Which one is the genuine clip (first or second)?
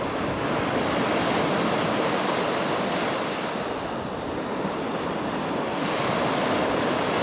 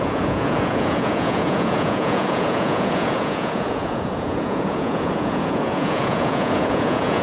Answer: first